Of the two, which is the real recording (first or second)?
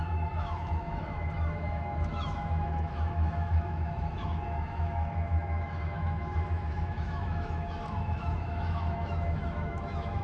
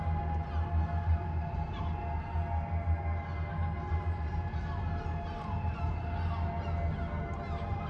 second